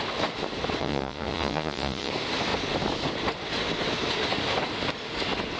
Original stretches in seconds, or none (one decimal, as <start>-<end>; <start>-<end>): 0.0-0.8; 2.1-5.6